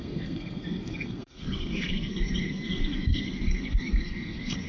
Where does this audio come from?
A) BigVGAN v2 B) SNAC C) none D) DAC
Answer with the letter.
B